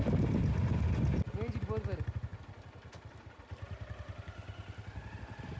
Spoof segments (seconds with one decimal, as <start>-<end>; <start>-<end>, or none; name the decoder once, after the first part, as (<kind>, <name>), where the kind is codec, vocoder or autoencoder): none